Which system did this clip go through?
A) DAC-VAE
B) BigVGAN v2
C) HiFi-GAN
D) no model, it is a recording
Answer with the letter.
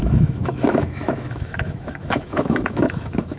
A